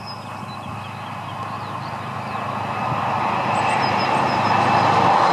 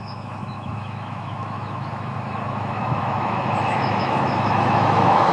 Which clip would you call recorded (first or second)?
first